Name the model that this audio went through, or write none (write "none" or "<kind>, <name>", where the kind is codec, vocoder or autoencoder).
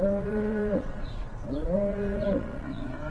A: vocoder, Vocos